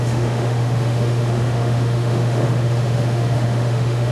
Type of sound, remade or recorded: remade